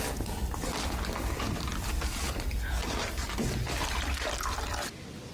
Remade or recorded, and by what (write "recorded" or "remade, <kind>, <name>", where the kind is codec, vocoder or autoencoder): recorded